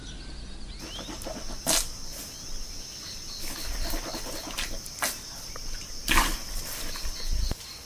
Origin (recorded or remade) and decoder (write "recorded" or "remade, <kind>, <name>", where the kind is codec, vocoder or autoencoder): recorded